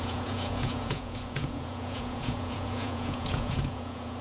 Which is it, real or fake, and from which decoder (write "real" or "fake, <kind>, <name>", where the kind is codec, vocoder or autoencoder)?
fake, vocoder, Vocos